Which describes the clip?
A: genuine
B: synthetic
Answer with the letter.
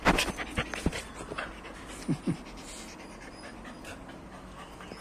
A